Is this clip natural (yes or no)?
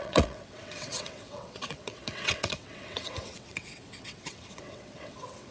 no